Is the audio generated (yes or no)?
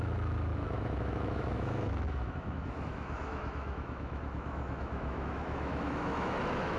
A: yes